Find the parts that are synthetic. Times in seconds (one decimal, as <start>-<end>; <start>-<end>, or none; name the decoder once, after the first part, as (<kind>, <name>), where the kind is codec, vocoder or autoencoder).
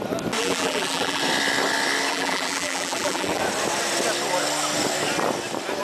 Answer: 0.4-1.2 (vocoder, BigVGAN v2); 2.1-3.4